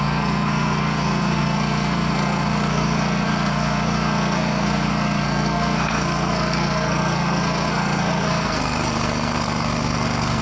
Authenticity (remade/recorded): remade